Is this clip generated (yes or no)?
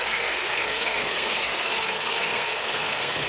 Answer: yes